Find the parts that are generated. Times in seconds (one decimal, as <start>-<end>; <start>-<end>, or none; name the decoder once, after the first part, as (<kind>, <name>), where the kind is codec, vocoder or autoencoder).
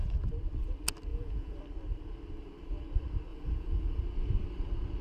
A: 1.1-1.6 (vocoder, Vocos); 3.3-4.0